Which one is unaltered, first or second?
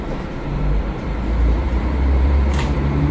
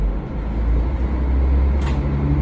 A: second